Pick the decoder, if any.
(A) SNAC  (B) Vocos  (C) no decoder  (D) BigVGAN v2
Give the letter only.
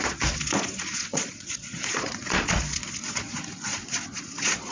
B